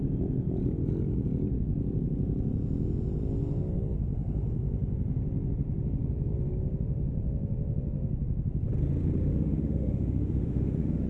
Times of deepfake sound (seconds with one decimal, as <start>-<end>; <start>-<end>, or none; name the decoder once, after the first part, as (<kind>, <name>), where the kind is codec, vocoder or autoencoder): 9.3-11.1 (autoencoder, DAC-VAE)